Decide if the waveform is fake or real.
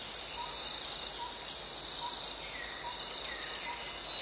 real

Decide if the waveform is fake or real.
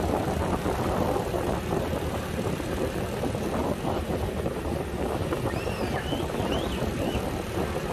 real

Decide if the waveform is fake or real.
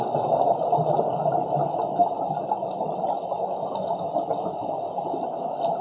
real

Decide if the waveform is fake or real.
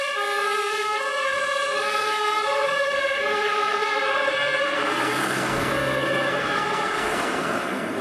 fake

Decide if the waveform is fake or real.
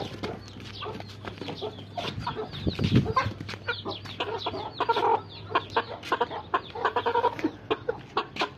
real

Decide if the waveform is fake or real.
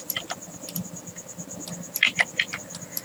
real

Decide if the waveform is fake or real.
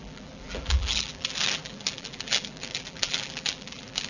fake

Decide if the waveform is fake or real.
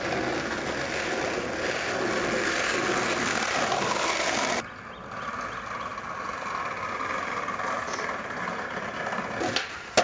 real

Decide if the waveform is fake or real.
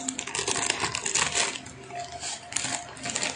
real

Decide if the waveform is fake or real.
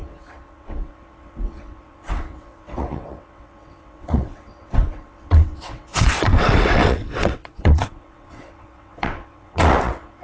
fake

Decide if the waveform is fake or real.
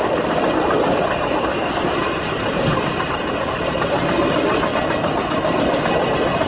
real